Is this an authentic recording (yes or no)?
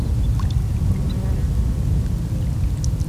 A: yes